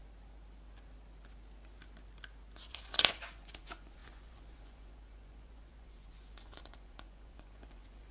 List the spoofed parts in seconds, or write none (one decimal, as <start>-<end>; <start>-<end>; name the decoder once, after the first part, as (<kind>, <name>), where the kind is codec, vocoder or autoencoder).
2.7-8.1 (vocoder, Vocos)